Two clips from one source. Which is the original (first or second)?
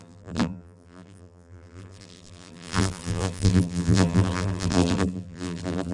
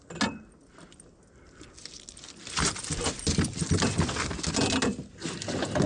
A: second